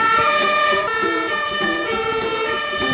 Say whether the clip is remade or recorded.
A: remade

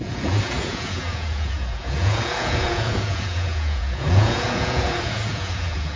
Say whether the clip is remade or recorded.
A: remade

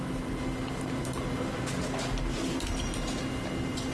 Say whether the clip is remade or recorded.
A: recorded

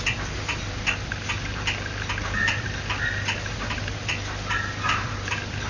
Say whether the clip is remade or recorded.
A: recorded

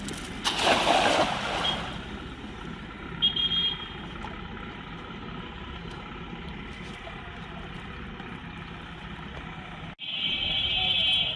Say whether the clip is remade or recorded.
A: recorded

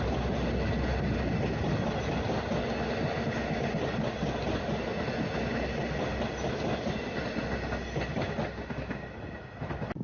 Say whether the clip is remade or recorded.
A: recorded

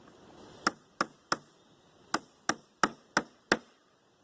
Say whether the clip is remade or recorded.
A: recorded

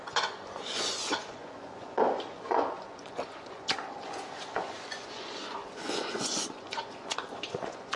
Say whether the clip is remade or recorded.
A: remade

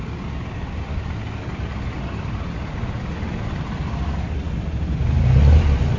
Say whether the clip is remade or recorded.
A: recorded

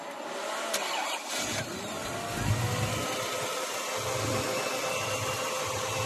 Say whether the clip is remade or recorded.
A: recorded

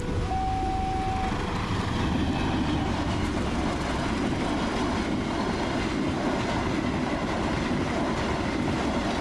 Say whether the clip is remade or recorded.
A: recorded